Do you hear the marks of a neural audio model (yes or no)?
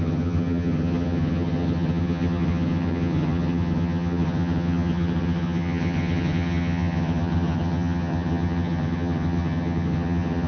yes